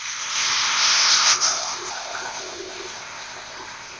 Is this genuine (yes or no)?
no